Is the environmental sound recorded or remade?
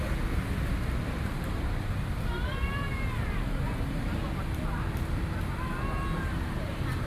recorded